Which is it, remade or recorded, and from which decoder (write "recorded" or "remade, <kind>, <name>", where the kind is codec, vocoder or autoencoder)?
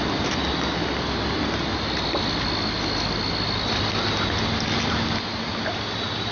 recorded